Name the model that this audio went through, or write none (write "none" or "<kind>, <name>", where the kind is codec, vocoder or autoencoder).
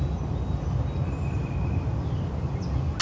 none